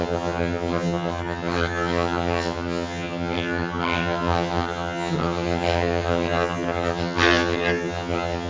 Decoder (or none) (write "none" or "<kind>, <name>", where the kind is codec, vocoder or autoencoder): vocoder, HiFi-GAN